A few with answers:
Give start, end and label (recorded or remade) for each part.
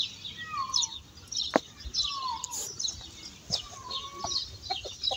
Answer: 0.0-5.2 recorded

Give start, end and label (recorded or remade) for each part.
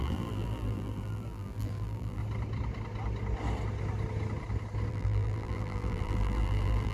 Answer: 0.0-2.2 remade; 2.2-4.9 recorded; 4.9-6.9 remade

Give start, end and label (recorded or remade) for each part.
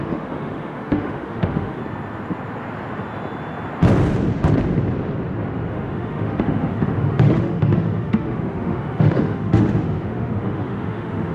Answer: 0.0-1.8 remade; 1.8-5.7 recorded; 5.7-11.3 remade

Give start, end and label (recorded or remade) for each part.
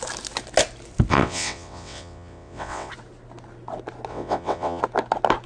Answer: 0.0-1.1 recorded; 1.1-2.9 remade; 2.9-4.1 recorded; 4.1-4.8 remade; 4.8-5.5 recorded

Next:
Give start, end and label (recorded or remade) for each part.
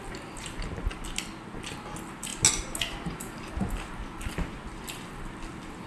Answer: 0.0-5.9 recorded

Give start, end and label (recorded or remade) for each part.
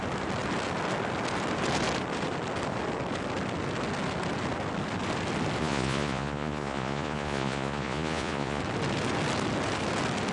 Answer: 0.0-5.6 recorded; 5.6-8.6 remade; 8.6-10.3 recorded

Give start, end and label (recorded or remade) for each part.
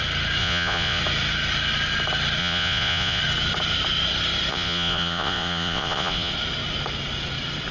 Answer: 0.0-0.4 recorded; 0.4-1.0 remade; 1.0-2.4 recorded; 2.4-3.2 remade; 3.2-4.5 recorded; 4.5-6.3 remade; 6.3-7.7 recorded